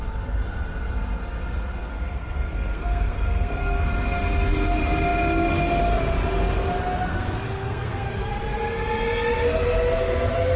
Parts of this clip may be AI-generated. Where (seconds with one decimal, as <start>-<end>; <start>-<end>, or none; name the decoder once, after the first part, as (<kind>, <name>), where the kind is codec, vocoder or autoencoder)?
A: 1.9-3.8 (codec, SNAC); 7.1-8.3